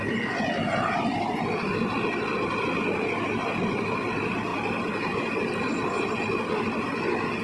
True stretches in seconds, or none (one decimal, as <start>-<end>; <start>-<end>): 0.0-7.4